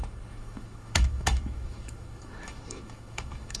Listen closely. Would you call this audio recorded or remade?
remade